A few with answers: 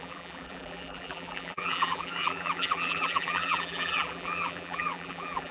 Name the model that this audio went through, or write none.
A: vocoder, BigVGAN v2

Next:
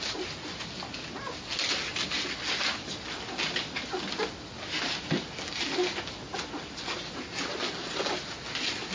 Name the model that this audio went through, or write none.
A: none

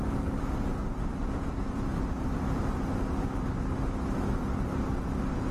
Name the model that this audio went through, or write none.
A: none